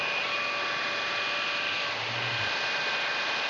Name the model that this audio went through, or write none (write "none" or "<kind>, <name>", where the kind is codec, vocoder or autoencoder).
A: none